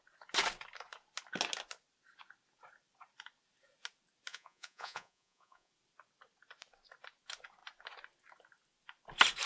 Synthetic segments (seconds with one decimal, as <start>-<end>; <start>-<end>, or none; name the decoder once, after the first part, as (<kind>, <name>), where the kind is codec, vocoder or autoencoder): 4.3-5.7 (vocoder, Vocos)